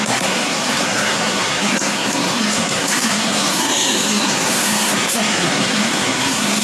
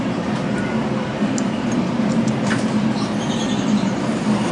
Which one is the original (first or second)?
second